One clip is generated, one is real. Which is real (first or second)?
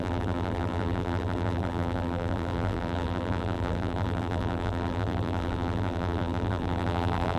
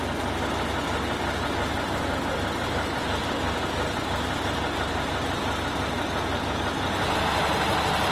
second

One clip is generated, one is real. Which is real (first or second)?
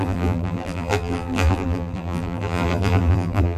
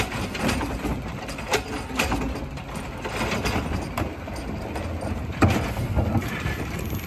second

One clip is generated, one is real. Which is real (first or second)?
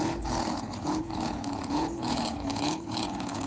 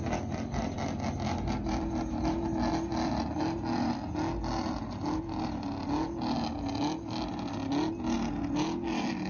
second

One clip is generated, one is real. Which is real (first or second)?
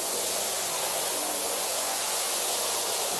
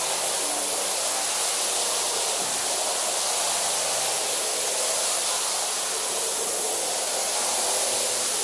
second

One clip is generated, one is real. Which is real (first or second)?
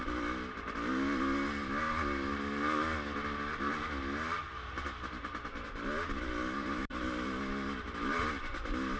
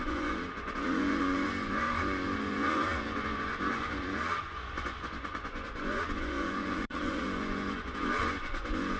first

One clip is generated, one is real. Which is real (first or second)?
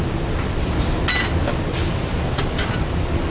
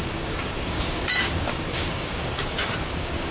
first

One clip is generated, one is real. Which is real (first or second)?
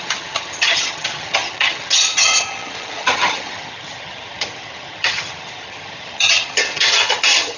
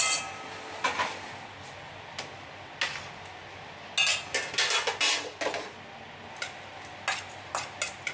second